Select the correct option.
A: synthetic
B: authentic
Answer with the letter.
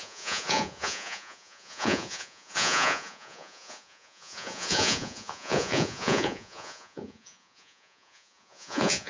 A